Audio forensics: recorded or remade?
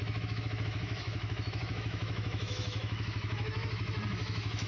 remade